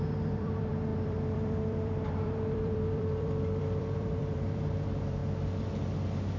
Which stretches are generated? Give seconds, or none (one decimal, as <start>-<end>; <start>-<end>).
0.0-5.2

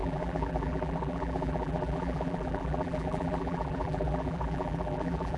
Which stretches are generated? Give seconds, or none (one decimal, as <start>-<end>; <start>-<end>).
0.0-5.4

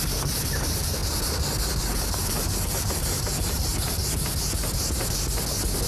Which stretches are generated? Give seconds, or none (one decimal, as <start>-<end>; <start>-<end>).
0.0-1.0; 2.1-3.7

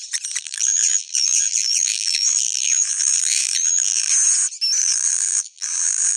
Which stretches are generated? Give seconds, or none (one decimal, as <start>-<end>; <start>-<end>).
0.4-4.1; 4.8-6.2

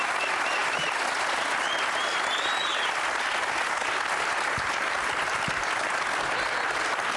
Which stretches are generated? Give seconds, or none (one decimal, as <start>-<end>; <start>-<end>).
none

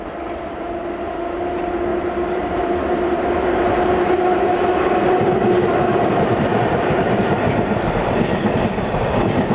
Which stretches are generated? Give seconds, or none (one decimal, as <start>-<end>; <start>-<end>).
1.9-2.9; 6.5-8.6

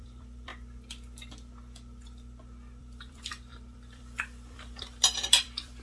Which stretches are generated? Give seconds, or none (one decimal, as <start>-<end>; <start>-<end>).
0.0-0.5; 2.8-5.8

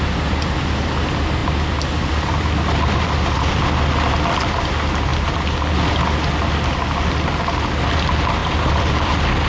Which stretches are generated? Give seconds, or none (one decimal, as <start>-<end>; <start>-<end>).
1.4-3.5; 8.4-9.1